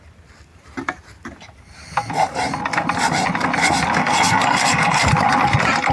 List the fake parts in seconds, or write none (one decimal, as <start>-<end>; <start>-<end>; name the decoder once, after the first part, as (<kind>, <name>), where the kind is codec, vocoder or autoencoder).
4.0-5.1 (codec, SNAC)